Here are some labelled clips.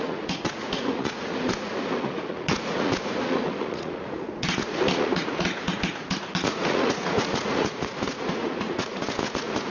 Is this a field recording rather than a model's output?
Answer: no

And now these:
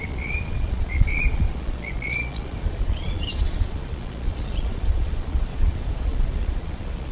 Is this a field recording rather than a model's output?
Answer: no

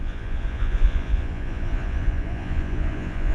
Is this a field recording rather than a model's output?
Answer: no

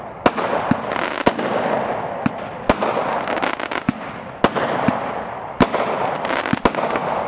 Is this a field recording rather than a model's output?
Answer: yes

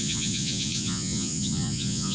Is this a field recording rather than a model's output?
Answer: no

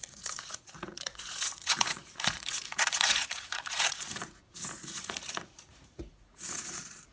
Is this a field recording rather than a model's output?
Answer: no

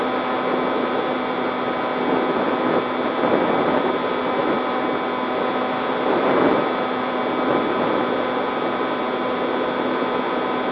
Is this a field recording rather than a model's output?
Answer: yes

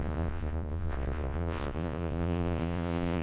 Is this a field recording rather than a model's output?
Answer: no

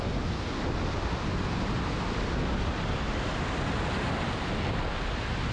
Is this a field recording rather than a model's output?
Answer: yes